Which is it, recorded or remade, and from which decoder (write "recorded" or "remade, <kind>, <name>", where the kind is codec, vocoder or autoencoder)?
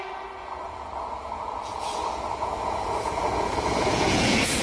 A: remade, vocoder, Vocos